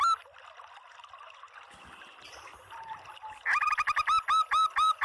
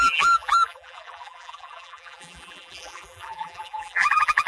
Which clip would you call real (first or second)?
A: first